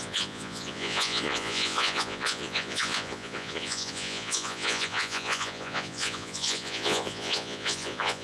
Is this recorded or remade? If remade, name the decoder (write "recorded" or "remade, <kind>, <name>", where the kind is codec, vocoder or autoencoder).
remade, vocoder, Vocos